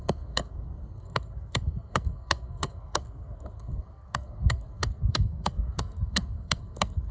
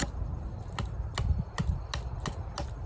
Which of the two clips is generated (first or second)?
first